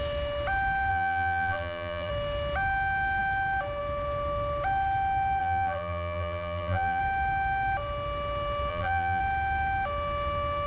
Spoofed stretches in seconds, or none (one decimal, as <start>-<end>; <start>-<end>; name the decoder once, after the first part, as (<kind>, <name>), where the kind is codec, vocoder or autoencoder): 0.9-2.1 (vocoder, BigVGAN v2); 5.4-7.0; 8.7-9.2